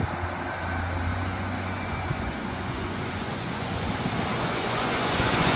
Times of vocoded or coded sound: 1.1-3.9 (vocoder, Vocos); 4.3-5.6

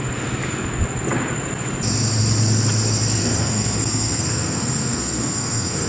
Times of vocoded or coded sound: 3.2-5.9 (codec, SNAC)